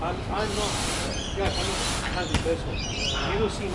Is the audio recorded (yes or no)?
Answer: yes